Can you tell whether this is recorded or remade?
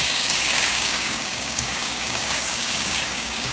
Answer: remade